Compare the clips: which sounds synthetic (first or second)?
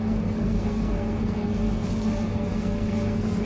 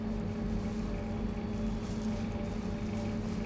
first